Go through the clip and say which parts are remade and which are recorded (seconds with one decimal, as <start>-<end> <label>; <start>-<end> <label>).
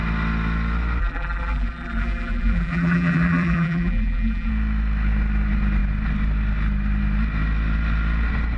0.0-1.0 recorded; 1.0-4.5 remade; 4.5-8.6 recorded